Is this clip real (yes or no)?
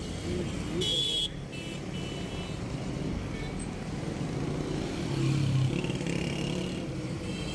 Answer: yes